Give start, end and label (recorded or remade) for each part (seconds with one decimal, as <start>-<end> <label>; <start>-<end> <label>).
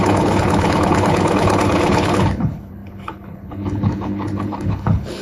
0.0-5.2 remade